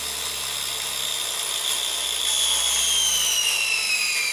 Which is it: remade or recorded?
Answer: recorded